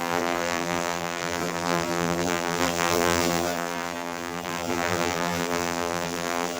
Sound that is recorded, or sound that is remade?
remade